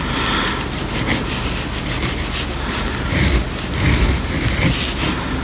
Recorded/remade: recorded